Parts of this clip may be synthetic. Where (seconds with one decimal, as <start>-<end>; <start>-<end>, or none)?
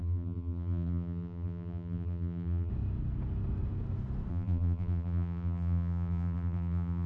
0.0-2.7; 4.3-7.1